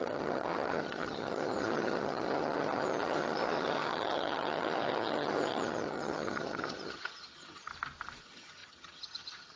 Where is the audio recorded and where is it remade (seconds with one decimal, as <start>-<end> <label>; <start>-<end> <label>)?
0.0-7.7 remade; 7.7-8.2 recorded; 8.2-9.6 remade